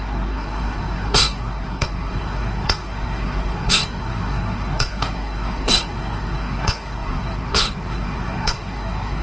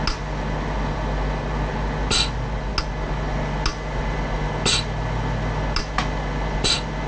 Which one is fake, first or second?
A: first